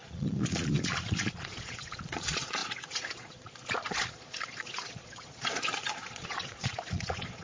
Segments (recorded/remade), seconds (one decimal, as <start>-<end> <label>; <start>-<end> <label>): 0.0-7.4 remade